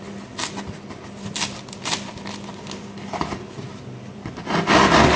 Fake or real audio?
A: real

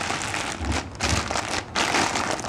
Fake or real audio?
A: real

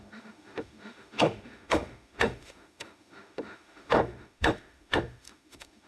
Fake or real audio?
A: fake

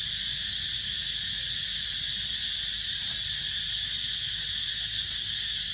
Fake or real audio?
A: real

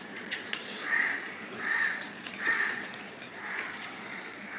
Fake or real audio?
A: fake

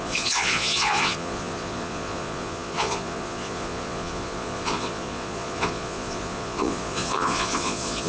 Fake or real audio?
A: fake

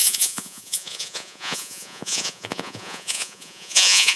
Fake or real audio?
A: fake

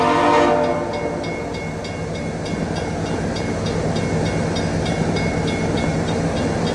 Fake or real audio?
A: real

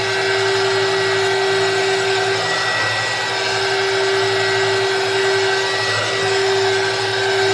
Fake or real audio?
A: real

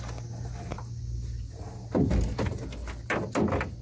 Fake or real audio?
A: real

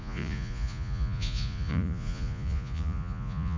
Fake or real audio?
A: fake